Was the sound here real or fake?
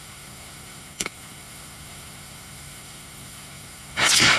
fake